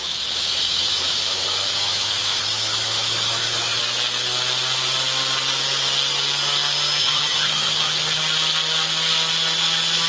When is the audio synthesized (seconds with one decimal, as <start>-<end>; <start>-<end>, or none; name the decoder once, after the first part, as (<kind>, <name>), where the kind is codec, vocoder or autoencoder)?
0.0-3.8 (autoencoder, DAC-VAE); 7.0-8.2